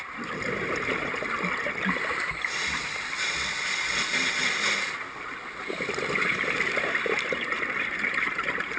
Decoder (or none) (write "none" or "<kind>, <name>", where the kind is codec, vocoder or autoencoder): none